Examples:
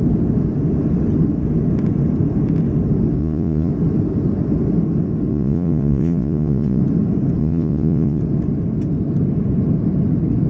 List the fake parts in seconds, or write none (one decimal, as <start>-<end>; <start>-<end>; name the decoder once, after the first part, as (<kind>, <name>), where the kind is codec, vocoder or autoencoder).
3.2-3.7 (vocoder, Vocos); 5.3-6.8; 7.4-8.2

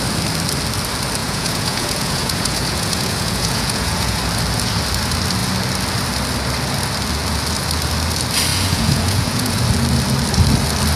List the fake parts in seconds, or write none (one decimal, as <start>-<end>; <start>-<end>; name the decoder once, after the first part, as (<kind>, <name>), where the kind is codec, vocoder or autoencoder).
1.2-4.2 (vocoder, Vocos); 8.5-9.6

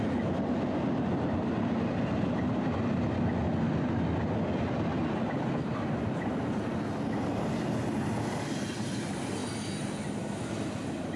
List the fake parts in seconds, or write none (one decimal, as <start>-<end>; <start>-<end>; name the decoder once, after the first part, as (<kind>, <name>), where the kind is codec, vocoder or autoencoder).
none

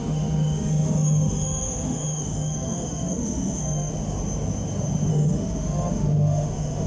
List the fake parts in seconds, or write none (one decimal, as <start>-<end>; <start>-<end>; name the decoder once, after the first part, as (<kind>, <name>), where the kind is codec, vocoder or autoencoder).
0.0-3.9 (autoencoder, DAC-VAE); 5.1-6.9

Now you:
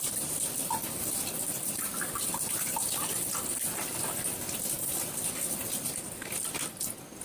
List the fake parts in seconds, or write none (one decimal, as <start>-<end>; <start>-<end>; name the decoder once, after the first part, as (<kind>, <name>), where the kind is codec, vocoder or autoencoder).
none